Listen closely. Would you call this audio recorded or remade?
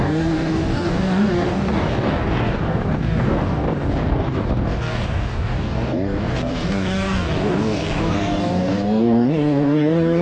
remade